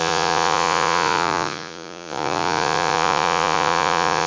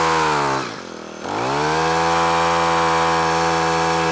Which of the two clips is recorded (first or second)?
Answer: second